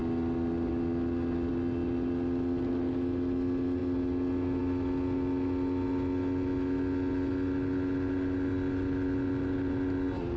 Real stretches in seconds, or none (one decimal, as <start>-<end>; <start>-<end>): 0.0-10.4